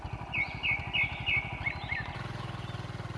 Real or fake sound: real